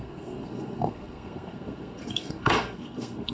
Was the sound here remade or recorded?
remade